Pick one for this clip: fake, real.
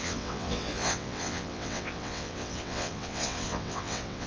fake